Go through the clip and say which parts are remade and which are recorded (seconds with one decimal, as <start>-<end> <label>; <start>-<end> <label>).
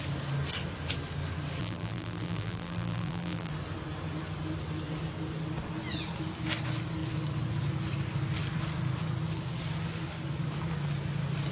0.0-1.6 recorded; 1.6-3.5 remade; 3.5-11.5 recorded